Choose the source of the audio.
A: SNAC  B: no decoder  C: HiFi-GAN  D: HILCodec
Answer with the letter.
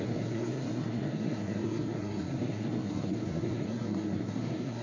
A